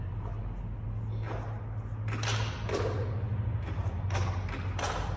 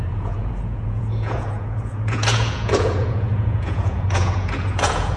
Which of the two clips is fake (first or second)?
second